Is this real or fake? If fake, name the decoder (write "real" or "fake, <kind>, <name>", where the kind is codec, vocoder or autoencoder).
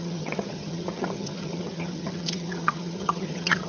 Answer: fake, vocoder, HiFi-GAN